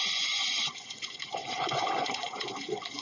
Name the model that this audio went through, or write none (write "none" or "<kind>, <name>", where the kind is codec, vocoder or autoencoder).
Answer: vocoder, Vocos